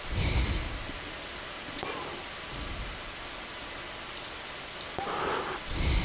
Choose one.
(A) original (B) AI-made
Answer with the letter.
A